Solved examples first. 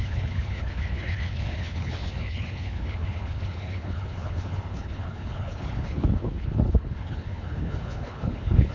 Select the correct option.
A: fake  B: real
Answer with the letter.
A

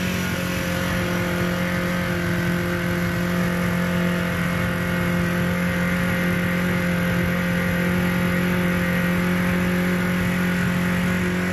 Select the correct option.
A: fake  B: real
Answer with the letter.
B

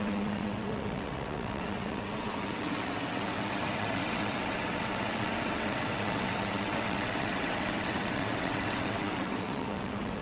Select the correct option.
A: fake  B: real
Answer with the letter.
A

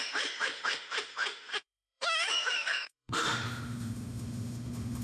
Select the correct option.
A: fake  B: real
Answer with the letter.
A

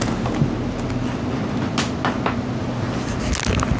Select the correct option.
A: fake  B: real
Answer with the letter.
B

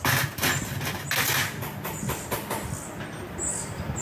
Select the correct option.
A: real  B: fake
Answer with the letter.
A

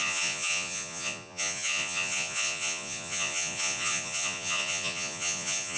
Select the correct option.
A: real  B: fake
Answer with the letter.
B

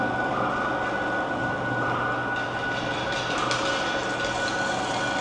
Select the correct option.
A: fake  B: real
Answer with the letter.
B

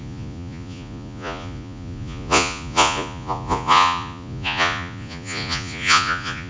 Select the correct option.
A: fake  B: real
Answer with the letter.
A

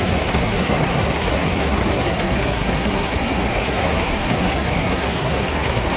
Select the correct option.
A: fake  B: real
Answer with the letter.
A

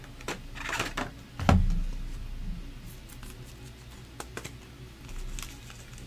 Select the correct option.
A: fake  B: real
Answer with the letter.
B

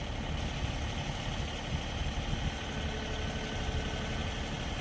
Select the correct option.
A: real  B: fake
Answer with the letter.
A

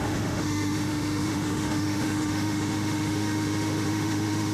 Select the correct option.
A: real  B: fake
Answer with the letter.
B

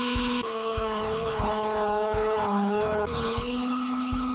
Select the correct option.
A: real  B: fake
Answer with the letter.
B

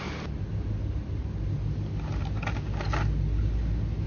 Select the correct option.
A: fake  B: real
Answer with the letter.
B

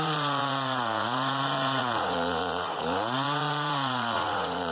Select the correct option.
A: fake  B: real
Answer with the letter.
A